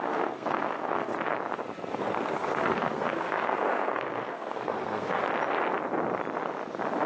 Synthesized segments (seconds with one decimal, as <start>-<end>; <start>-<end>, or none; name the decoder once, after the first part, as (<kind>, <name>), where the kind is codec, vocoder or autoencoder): 0.0-1.1 (codec, SNAC); 2.0-5.2